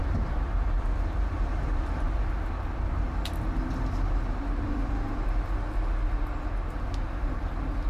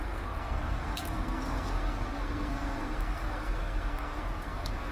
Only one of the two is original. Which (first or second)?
first